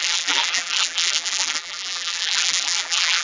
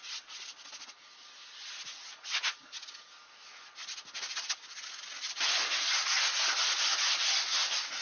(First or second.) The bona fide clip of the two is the second